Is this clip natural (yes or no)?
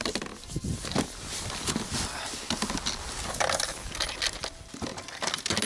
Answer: yes